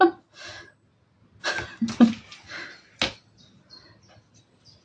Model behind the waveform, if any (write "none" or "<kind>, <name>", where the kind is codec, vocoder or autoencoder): none